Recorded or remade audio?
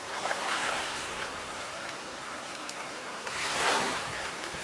remade